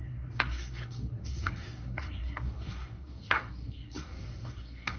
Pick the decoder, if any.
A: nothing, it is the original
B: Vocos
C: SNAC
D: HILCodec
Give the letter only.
C